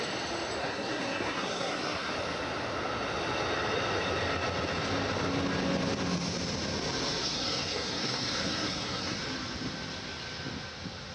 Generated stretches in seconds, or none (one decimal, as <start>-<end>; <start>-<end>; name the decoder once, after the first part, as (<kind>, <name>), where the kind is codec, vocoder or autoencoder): 0.6-2.1 (codec, SNAC); 7.2-9.2